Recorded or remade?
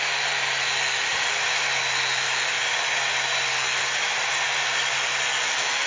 recorded